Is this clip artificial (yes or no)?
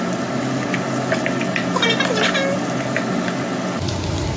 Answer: no